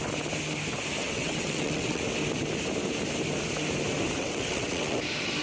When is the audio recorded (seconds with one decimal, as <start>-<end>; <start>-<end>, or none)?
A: 0.0-1.0; 2.0-4.2; 5.0-5.4